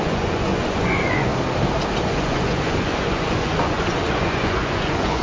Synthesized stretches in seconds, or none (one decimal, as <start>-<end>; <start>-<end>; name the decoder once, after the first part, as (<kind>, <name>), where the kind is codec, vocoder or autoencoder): 0.0-1.3 (vocoder, Vocos); 2.0-5.2